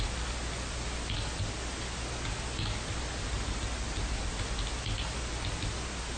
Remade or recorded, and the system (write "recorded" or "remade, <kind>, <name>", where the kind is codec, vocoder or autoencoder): recorded